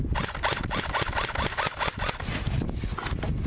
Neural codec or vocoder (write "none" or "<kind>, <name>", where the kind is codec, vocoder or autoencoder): none